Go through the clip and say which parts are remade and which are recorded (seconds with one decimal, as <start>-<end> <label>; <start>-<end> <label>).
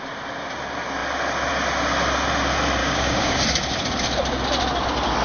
0.0-2.8 recorded; 2.8-3.4 remade; 3.4-5.2 recorded